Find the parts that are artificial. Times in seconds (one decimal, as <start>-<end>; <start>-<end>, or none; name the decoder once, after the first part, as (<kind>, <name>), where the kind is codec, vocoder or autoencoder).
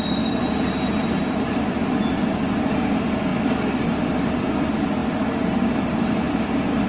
none